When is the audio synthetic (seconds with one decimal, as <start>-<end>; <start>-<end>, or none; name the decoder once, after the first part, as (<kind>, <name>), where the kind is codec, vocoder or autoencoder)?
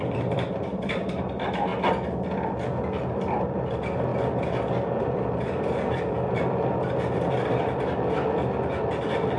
0.0-1.7 (vocoder, BigVGAN v2); 3.6-4.1; 5.0-9.4